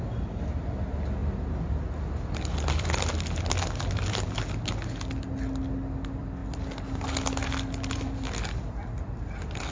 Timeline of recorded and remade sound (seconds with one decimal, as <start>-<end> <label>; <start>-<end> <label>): 0.0-9.7 recorded